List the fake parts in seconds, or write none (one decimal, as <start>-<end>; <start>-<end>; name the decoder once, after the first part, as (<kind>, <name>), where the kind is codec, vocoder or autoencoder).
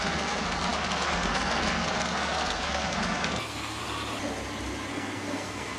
0.0-3.8 (codec, SNAC); 4.9-5.8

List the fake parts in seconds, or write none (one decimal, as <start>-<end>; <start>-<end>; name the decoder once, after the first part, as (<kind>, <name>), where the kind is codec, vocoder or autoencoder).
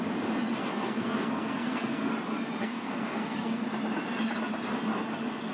0.6-2.1 (codec, SNAC); 2.6-3.6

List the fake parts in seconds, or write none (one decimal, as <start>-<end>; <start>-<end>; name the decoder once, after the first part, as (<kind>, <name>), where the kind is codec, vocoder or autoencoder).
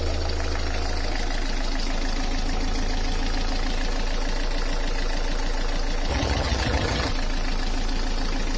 6.1-7.1 (vocoder, HiFi-GAN)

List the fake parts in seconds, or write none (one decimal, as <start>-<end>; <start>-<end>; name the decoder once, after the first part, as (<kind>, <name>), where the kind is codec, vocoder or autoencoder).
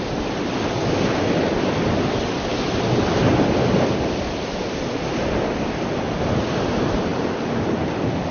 none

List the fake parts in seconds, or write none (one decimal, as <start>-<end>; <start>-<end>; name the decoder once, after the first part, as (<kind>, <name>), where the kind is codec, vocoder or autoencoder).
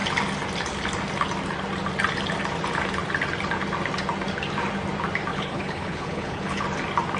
5.3-6.6 (codec, HILCodec)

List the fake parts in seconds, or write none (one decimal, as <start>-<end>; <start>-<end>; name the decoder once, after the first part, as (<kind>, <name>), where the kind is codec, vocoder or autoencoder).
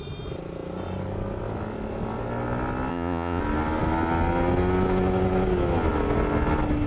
2.9-3.4 (vocoder, Vocos)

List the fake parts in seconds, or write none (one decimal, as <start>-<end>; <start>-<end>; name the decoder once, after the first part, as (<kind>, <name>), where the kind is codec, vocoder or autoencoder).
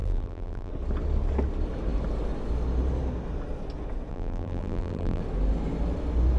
0.0-0.7 (vocoder, BigVGAN v2); 4.1-5.2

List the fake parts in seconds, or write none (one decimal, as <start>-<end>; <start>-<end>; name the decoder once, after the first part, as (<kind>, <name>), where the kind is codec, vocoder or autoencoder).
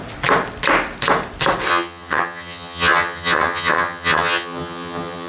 1.7-5.3 (vocoder, HiFi-GAN)